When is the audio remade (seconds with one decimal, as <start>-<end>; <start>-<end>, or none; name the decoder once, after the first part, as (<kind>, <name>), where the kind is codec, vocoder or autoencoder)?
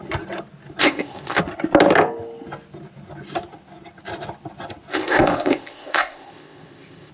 0.8-1.4 (codec, ZipCodec); 4.9-7.1